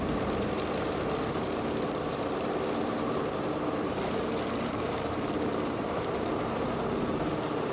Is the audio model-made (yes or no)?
yes